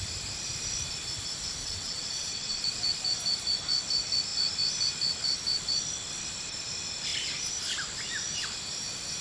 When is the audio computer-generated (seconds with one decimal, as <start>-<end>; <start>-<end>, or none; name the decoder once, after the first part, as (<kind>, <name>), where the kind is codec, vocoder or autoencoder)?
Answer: 1.6-2.6 (vocoder, WaveNeXt)